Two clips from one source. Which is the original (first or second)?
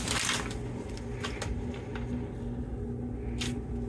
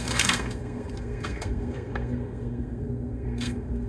first